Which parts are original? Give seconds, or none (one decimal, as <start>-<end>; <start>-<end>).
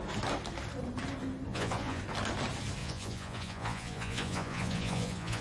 0.0-1.5; 2.0-2.8